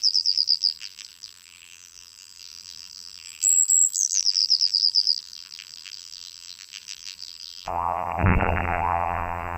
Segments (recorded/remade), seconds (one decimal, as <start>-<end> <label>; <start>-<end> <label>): 0.0-9.6 remade